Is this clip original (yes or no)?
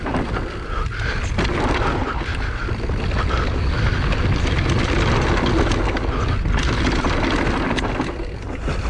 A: yes